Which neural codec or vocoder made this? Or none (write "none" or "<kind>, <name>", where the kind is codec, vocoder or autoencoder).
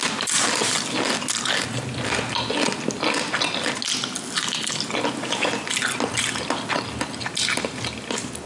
none